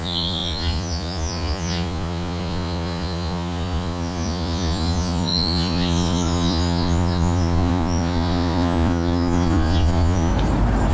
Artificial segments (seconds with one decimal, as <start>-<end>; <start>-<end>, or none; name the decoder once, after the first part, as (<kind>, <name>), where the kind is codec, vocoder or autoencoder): 0.0-10.3 (vocoder, Vocos)